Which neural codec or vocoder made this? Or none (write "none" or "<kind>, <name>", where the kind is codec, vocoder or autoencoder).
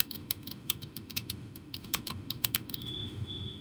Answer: autoencoder, DAC-VAE